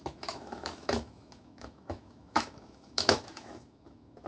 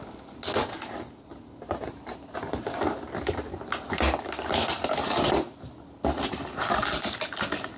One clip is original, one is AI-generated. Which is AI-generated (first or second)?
first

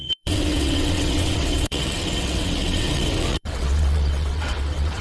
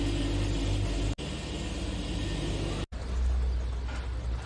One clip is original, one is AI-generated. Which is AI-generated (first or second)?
first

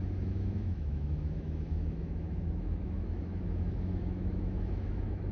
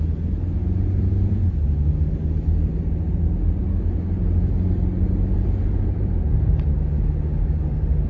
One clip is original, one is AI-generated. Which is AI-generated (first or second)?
first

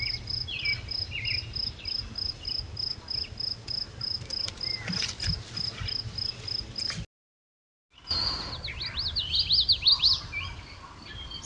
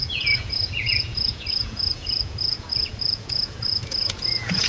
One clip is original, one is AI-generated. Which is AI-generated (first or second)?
second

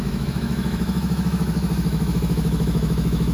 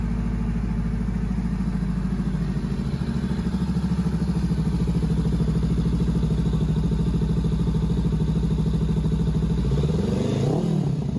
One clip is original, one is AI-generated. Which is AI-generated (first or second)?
first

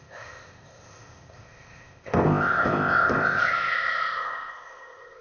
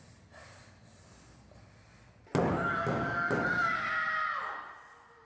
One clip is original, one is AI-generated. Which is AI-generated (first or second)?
first